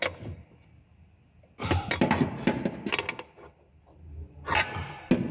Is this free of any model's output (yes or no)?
yes